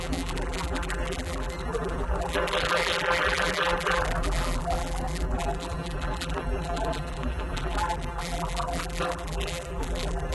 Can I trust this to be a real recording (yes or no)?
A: no